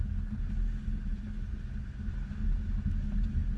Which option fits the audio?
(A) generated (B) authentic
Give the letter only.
B